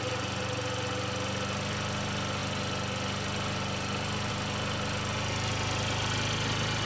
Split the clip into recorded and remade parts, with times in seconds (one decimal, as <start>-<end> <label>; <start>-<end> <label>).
0.0-6.9 recorded